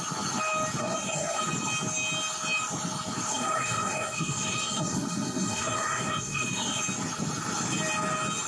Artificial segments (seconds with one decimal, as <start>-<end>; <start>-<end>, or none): 0.8-1.4; 3.3-6.8